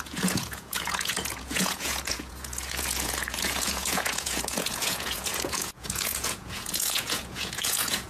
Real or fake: fake